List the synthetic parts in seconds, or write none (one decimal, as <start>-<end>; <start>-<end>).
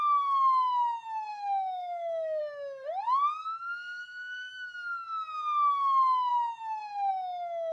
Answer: 1.3-2.4; 3.4-4.5